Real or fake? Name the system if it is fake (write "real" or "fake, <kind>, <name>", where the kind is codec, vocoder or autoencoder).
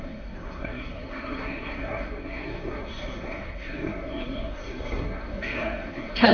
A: fake, codec, SNAC